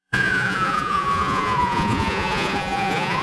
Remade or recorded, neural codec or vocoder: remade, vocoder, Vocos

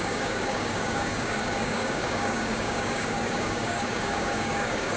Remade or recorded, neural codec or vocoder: remade, codec, DAC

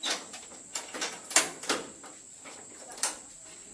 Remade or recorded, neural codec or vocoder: recorded